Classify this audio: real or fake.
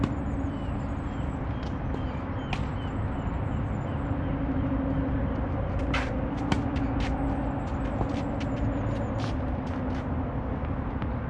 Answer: real